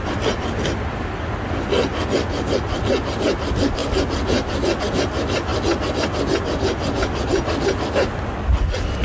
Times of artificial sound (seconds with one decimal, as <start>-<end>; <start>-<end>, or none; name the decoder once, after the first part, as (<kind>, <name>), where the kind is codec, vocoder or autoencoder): none